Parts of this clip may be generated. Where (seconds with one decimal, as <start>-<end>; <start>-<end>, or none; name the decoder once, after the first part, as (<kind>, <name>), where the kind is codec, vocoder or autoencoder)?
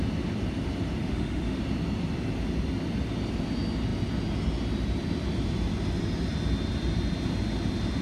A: 1.0-1.6 (autoencoder, DAC-VAE)